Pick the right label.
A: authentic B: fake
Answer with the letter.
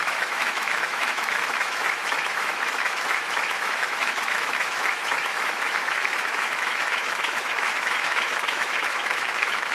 B